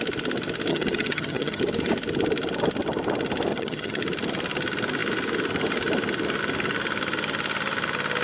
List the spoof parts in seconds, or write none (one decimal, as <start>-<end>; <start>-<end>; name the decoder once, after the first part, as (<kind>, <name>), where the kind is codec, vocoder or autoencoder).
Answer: 0.7-1.6 (vocoder, HiFi-GAN); 3.5-4.0